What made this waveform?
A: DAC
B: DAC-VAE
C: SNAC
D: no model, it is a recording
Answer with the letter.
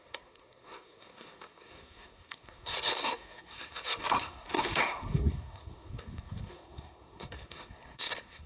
C